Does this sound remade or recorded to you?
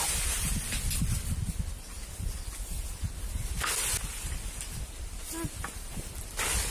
recorded